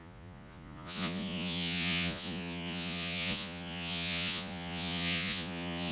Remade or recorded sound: remade